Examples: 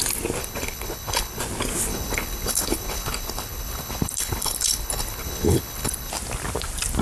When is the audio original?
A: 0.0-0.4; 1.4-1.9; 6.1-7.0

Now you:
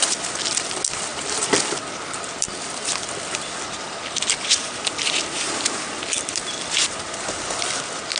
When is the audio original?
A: 0.0-8.2